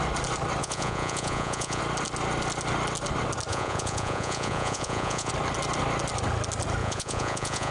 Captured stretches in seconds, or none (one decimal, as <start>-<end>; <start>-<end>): 0.0-0.6; 1.8-3.5; 5.3-6.8